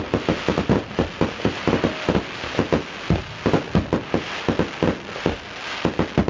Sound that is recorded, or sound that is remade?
recorded